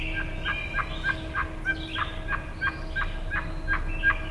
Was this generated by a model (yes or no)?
no